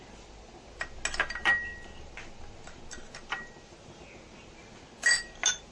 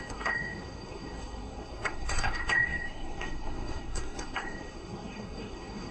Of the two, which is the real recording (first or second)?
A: first